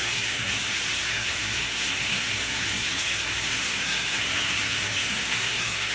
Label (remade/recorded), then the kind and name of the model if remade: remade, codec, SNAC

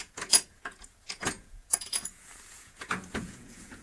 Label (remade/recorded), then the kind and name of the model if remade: remade, vocoder, Vocos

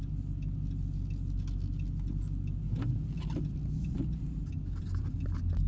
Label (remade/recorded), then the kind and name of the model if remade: recorded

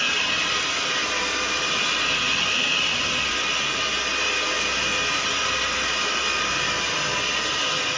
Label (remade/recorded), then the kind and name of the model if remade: recorded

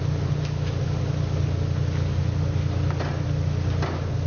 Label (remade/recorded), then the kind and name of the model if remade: recorded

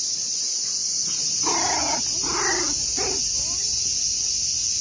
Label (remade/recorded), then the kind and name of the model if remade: recorded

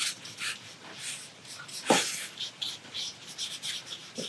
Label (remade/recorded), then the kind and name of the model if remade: recorded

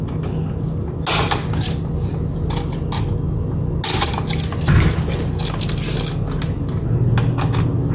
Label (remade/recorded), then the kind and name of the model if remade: recorded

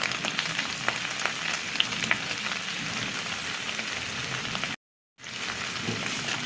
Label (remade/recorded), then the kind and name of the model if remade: recorded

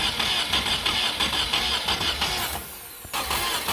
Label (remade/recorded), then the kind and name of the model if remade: recorded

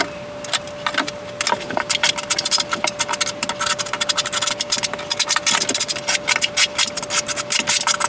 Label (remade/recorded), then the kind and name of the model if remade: recorded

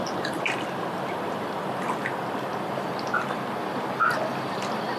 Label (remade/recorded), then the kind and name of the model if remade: recorded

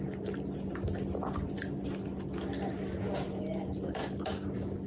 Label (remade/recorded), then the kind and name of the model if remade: recorded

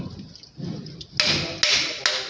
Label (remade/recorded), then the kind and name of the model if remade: recorded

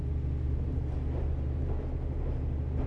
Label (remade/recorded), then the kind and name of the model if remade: recorded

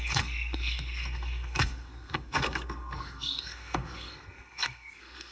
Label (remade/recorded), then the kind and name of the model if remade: remade, codec, SNAC